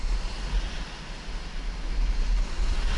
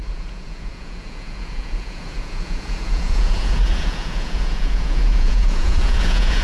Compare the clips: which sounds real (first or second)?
first